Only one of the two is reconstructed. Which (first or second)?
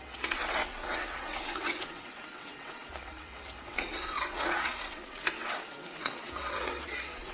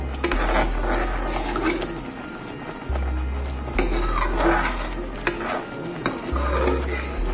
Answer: first